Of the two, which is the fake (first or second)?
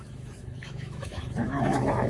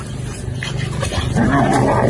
first